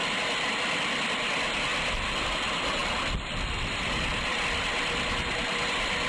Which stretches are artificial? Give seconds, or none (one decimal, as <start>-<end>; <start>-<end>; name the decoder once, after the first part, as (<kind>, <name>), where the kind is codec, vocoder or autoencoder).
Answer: none